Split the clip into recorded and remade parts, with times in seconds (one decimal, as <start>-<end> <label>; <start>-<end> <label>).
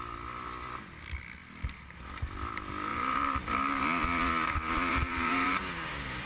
0.0-2.9 recorded; 2.9-3.7 remade; 3.7-4.9 recorded; 4.9-5.6 remade; 5.6-6.3 recorded